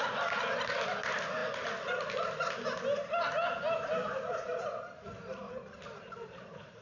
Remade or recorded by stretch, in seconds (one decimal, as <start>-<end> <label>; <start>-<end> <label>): 0.0-6.8 recorded